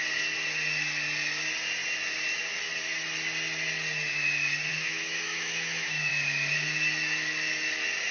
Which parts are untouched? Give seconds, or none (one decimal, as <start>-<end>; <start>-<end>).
0.0-4.7; 6.1-8.1